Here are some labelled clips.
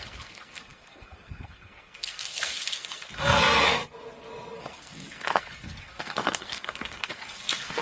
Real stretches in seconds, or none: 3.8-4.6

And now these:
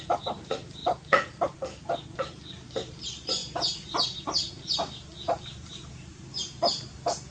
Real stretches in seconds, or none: 3.4-4.5

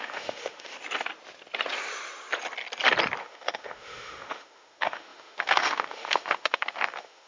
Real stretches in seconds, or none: 0.8-3.2

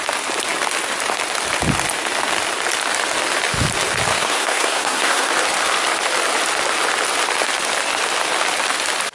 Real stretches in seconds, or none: 0.0-4.1; 5.3-9.1

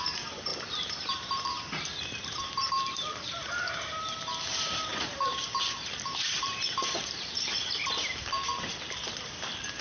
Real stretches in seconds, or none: none